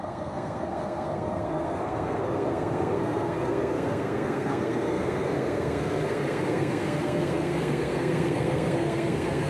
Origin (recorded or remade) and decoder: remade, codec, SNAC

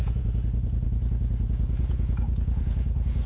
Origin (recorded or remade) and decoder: remade, vocoder, Vocos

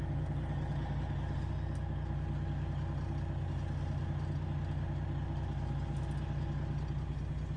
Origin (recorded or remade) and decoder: recorded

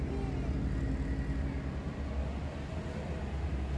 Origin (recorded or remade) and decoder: recorded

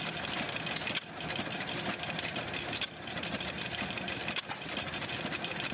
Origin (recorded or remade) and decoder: recorded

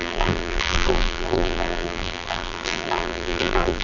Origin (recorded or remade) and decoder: remade, vocoder, BigVGAN v2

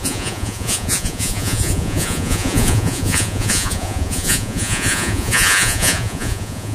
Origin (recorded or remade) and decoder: remade, vocoder, Vocos